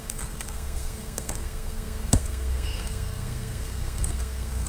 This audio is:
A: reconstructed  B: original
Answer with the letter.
A